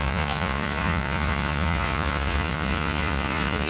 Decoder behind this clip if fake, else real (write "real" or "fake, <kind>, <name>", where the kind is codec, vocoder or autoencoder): fake, vocoder, Vocos